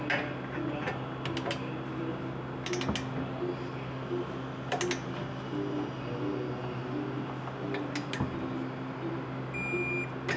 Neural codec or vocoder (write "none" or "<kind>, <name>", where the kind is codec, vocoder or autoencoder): none